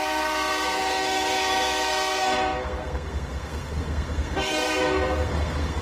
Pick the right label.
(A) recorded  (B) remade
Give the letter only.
B